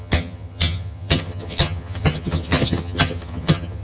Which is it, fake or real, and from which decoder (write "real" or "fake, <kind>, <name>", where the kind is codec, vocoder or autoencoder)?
fake, vocoder, HiFi-GAN